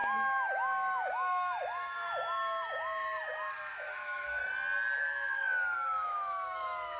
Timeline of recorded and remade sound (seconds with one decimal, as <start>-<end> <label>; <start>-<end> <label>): 0.0-4.4 remade; 4.4-5.0 recorded; 5.0-7.0 remade

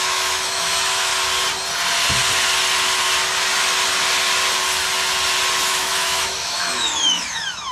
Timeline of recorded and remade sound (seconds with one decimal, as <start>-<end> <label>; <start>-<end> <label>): 0.0-1.1 remade; 1.1-5.7 recorded; 5.7-7.7 remade